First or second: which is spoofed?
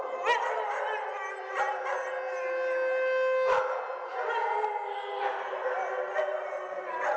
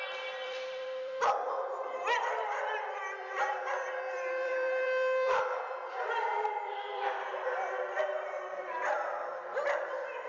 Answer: second